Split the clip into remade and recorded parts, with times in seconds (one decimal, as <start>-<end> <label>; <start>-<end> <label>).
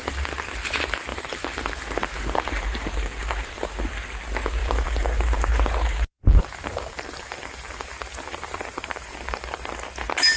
0.0-1.1 recorded; 1.1-3.8 remade; 3.8-4.6 recorded; 4.6-9.7 remade; 9.7-10.4 recorded